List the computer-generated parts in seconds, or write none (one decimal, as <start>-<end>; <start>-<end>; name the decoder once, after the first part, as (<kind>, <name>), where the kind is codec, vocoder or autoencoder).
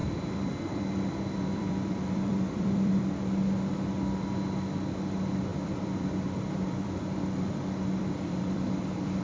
0.0-3.0 (vocoder, BigVGAN v2); 5.5-9.2